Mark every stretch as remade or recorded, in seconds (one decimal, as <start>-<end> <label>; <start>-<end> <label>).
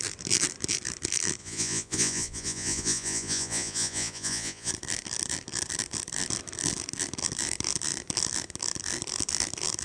0.0-1.4 recorded; 1.4-4.7 remade; 4.7-9.8 recorded